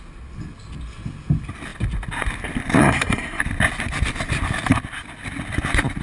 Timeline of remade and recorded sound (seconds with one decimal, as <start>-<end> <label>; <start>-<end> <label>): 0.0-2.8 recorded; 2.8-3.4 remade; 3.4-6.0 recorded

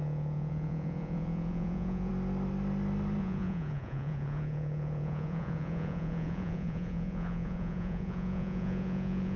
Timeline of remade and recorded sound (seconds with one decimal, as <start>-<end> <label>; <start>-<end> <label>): 0.0-2.1 remade; 2.1-3.2 recorded; 3.2-9.4 remade

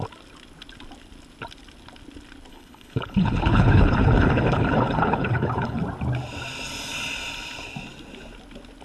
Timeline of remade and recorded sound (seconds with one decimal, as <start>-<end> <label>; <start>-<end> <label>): 0.0-2.5 recorded; 2.5-5.8 remade; 5.8-8.8 recorded